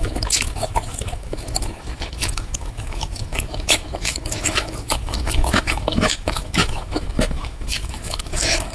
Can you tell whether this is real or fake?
fake